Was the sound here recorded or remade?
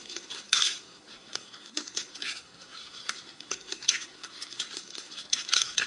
remade